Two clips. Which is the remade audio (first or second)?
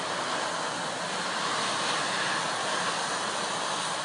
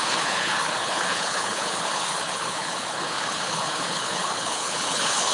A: second